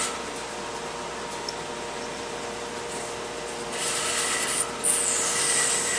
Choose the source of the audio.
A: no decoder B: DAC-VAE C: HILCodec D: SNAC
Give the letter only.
A